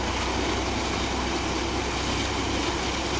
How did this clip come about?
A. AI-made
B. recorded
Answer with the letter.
B